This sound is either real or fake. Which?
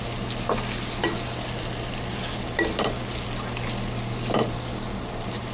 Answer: real